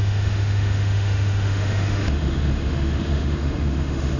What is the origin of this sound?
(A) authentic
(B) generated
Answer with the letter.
B